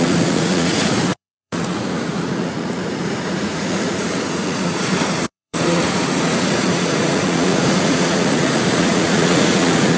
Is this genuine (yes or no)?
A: no